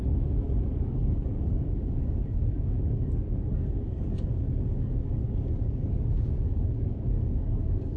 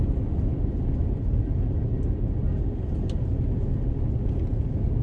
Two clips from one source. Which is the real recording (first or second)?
second